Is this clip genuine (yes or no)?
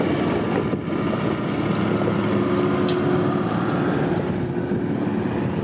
yes